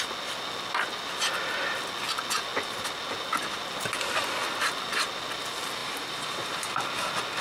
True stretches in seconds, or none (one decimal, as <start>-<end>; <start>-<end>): 0.0-5.8; 6.5-7.4